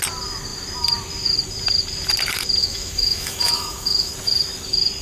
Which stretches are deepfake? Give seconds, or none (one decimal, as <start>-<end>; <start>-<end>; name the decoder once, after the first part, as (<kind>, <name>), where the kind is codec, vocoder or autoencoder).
2.6-4.1 (autoencoder, DAC-VAE)